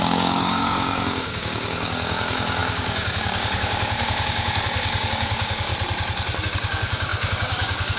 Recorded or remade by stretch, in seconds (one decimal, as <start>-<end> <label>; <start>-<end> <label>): 0.0-5.7 remade; 5.7-6.4 recorded; 6.4-8.0 remade